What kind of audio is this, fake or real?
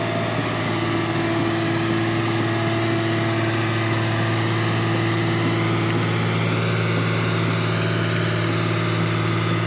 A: real